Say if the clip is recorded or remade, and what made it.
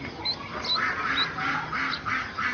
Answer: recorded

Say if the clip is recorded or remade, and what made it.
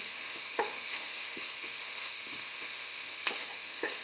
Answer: remade, autoencoder, DAC-VAE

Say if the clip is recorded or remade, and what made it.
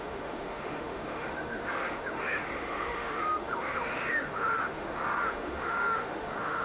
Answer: remade, autoencoder, DAC-VAE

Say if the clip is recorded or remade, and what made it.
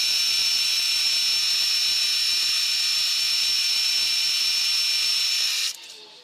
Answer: recorded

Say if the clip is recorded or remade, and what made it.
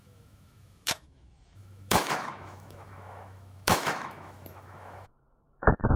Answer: remade, autoencoder, DAC-VAE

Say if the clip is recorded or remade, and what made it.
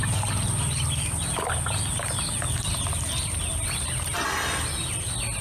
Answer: recorded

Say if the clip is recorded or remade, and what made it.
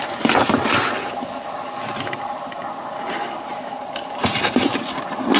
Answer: recorded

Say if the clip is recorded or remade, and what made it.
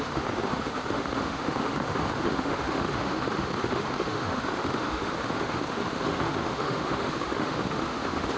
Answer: remade, autoencoder, DAC-VAE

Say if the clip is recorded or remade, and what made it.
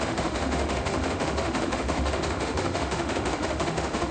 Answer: remade, autoencoder, DAC-VAE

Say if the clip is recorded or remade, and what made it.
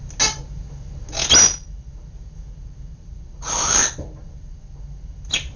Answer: recorded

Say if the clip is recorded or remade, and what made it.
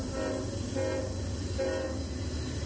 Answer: recorded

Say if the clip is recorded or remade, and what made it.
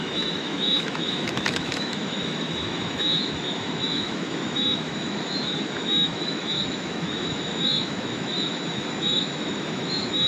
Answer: remade, autoencoder, DAC-VAE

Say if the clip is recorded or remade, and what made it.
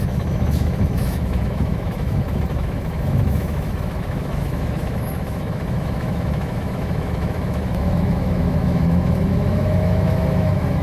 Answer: remade, autoencoder, DAC-VAE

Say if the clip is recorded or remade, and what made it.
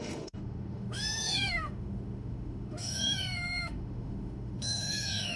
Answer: remade, autoencoder, DAC-VAE